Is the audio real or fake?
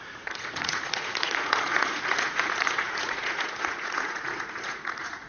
fake